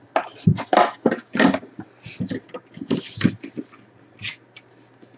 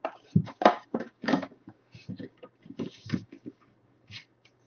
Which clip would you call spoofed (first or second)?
second